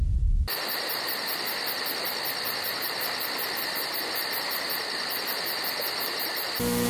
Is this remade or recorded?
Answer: recorded